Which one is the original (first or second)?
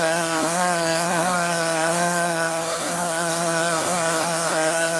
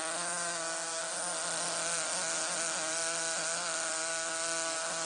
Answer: second